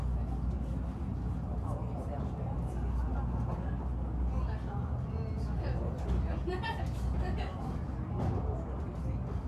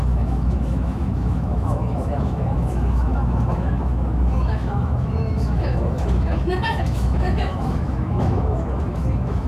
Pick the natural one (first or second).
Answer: first